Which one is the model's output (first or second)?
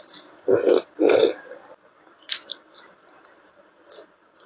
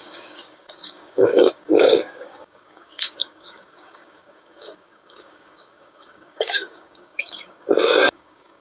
second